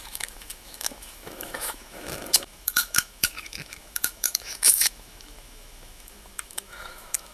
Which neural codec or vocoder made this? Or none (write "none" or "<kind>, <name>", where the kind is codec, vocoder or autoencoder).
autoencoder, DAC-VAE